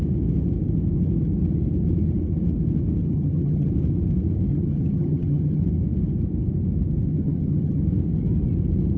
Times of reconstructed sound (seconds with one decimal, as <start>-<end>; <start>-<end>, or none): 3.0-3.7; 4.5-5.6; 7.1-7.8